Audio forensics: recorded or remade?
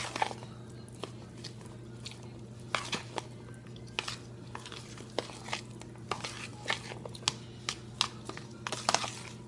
recorded